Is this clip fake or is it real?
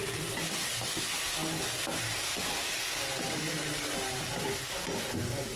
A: real